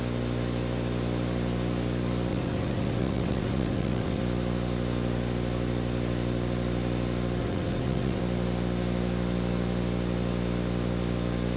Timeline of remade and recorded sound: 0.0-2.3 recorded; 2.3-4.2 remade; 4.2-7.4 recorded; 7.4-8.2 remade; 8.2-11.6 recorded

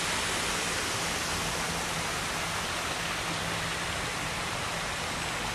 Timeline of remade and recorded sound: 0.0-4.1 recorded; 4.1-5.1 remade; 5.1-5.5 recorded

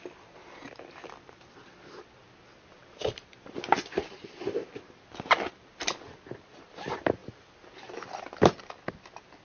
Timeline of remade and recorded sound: 0.0-9.4 recorded

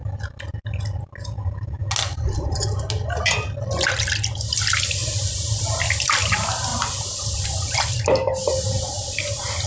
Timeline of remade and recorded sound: 0.0-6.7 recorded; 6.7-8.0 remade; 8.0-9.7 recorded

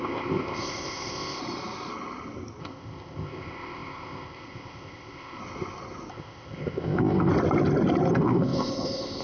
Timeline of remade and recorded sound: 0.0-1.4 remade; 1.4-2.6 recorded; 2.6-5.4 remade; 5.4-6.1 recorded; 6.1-7.3 remade; 7.3-8.1 recorded; 8.1-9.2 remade